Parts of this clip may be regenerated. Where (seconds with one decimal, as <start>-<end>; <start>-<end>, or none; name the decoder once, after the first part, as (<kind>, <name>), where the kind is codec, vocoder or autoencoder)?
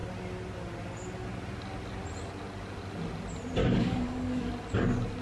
3.6-4.5 (codec, DAC)